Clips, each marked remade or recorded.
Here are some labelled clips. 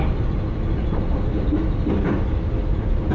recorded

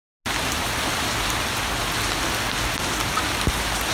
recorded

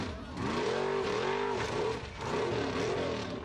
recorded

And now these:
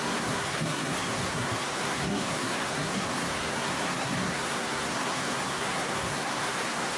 remade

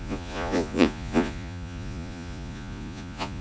remade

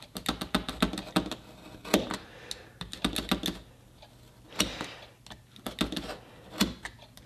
recorded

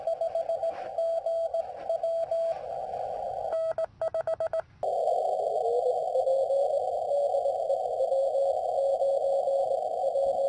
recorded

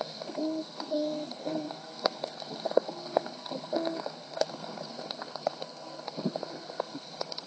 remade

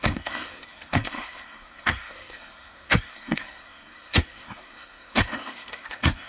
remade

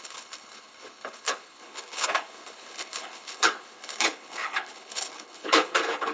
remade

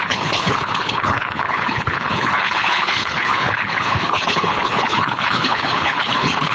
remade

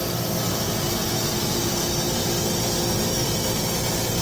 recorded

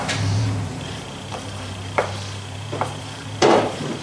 remade